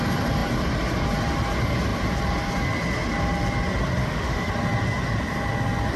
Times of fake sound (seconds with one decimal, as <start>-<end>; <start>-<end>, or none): 4.0-4.5